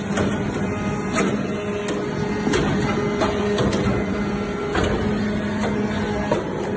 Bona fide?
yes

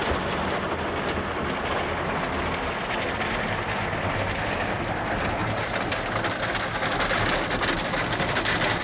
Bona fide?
yes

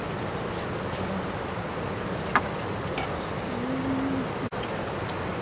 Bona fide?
yes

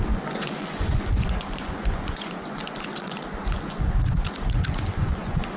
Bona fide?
no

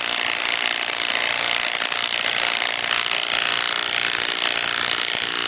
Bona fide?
yes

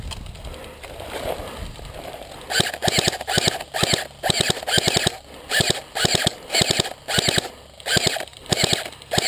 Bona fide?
yes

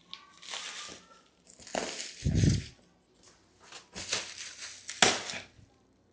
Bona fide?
yes